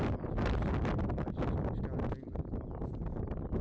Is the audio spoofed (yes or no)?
no